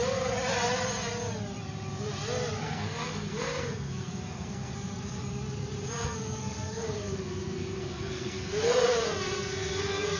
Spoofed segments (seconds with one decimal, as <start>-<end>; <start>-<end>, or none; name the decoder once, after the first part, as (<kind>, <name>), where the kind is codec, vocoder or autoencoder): 2.6-5.2 (codec, SNAC); 6.0-10.2